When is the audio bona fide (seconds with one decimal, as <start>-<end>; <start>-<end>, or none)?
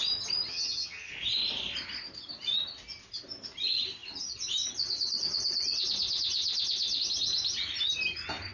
0.0-0.5; 1.1-8.5